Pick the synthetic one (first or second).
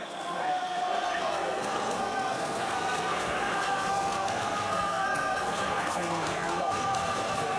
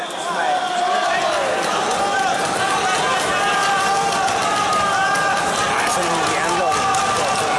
first